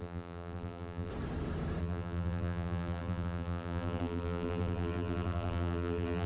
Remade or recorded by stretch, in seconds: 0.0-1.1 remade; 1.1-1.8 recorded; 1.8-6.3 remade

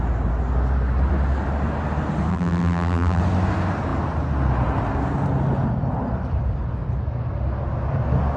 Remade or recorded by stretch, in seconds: 0.0-2.3 recorded; 2.3-3.2 remade; 3.2-8.4 recorded

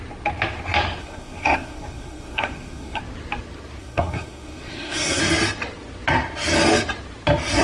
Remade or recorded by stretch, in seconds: 0.0-1.0 recorded; 1.0-3.0 remade; 3.0-3.8 recorded; 3.8-5.2 remade; 5.2-7.6 recorded

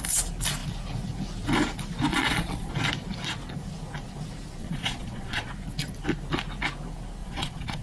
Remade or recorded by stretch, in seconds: 0.0-2.1 recorded; 2.1-2.7 remade; 2.7-4.6 recorded; 4.6-5.5 remade; 5.5-7.2 recorded; 7.2-7.8 remade

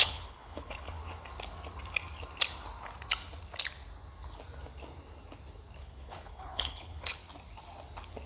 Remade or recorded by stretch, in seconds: 0.0-1.0 remade; 1.0-5.8 recorded; 5.8-7.2 remade; 7.2-8.3 recorded

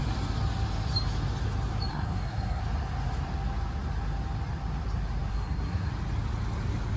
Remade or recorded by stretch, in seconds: 0.0-1.9 recorded; 1.9-2.6 remade; 2.6-5.3 recorded; 5.3-5.9 remade; 5.9-7.0 recorded

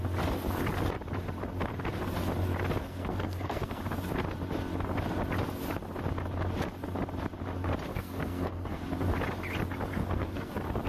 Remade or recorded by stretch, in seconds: 0.0-2.8 recorded; 2.8-3.8 remade; 3.8-7.9 recorded; 7.9-8.8 remade; 8.8-9.9 recorded; 9.9-10.5 remade; 10.5-10.9 recorded